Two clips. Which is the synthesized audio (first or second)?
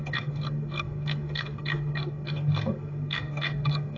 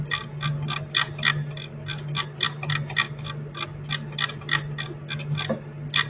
first